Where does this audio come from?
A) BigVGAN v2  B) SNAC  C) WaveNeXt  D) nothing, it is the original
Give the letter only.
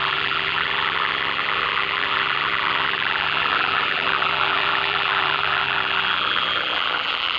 A